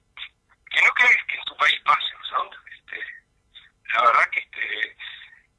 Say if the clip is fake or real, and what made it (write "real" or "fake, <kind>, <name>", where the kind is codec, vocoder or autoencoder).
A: fake, vocoder, BigVGAN v2